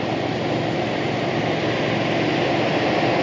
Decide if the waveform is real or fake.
real